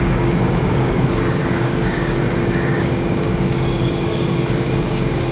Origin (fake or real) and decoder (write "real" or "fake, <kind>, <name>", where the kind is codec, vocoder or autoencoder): fake, codec, DAC